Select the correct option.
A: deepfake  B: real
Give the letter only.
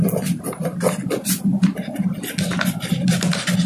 B